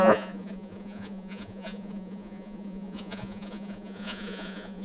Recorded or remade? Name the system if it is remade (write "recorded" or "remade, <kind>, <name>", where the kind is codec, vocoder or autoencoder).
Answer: remade, vocoder, Vocos